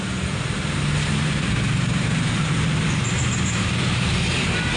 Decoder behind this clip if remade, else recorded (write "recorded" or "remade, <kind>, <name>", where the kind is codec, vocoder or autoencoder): remade, vocoder, BigVGAN v2